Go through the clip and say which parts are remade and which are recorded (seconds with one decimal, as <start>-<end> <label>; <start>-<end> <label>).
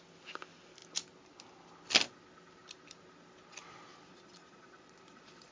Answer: 0.0-3.9 recorded; 3.9-5.5 remade